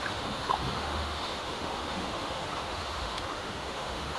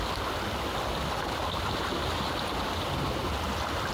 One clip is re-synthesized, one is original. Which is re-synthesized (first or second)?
first